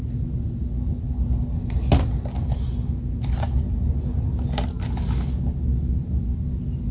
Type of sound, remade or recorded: recorded